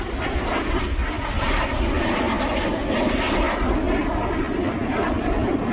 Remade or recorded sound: recorded